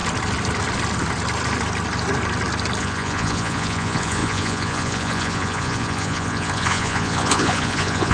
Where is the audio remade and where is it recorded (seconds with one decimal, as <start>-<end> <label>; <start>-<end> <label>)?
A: 0.0-2.8 recorded; 2.8-8.1 remade